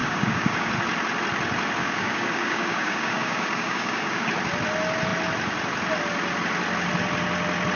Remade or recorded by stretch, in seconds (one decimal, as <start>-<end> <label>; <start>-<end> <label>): 0.0-0.7 remade; 0.7-1.8 recorded; 1.8-4.3 remade; 4.3-7.8 recorded